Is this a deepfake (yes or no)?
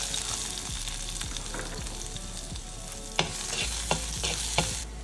no